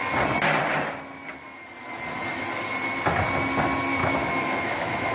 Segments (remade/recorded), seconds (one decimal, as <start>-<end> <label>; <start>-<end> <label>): 0.0-4.0 recorded; 4.0-5.1 remade